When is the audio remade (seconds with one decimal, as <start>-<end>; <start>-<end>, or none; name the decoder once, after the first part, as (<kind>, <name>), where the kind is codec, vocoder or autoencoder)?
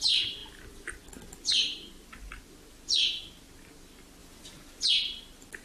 none